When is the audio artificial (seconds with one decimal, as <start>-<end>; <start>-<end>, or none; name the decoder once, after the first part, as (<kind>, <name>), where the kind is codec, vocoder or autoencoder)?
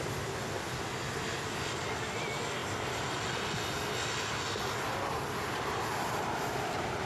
none